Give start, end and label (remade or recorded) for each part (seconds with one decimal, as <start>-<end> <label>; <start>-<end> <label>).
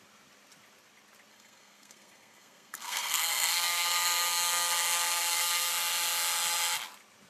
0.0-1.3 recorded; 1.3-5.7 remade; 5.7-7.3 recorded